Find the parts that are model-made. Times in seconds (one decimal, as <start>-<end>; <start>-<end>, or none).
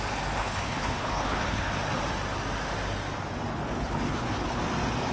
0.4-1.7; 3.5-4.6